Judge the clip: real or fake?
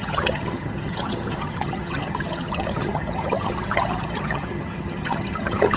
fake